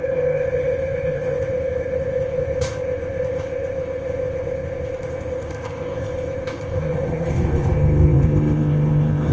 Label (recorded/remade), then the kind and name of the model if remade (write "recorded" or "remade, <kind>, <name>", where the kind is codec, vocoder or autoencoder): remade, codec, ZipCodec